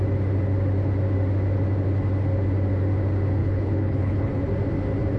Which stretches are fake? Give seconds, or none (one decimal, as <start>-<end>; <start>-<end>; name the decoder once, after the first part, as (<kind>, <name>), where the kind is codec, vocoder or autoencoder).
3.4-4.3 (codec, HILCodec)

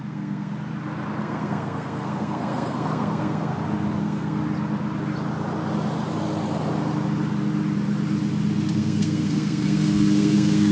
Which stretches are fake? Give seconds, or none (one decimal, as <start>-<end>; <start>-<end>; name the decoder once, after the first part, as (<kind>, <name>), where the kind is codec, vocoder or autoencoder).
0.0-0.5 (codec, SNAC); 1.2-3.5; 4.0-4.4; 8.7-10.7

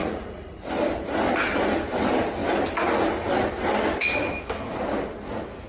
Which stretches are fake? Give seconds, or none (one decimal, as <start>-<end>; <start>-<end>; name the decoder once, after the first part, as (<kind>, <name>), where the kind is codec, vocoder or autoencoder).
0.0-0.7 (vocoder, Vocos)

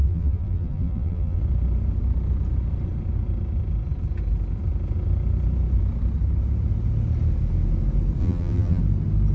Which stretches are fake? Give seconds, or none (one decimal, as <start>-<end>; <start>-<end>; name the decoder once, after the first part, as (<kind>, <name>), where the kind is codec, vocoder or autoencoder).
0.0-1.4 (vocoder, BigVGAN v2); 8.2-8.8